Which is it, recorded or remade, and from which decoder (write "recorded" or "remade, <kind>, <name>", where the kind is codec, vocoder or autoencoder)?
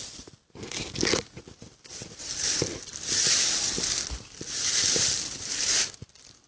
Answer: remade, vocoder, BigVGAN v2